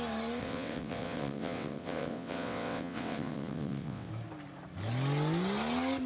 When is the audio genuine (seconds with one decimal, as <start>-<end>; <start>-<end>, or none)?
0.0-0.4; 4.1-6.1